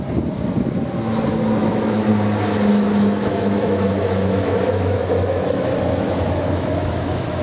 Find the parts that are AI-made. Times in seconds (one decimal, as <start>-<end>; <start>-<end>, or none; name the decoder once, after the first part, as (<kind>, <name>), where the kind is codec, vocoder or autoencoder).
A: 1.6-2.1 (autoencoder, DAC-VAE); 2.7-7.4